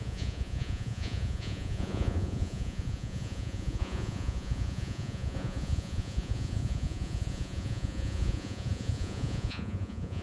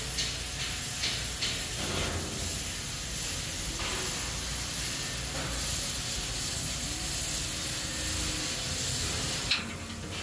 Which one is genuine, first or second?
second